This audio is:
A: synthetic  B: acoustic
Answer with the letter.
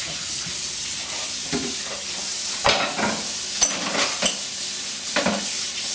B